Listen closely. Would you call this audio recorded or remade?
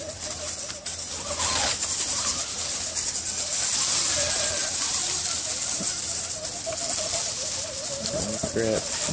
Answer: recorded